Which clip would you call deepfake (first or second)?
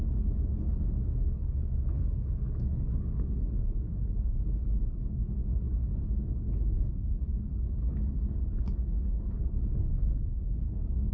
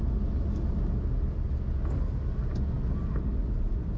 first